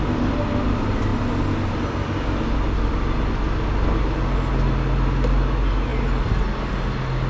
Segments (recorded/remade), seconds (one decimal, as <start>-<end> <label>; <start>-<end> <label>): 0.0-7.3 recorded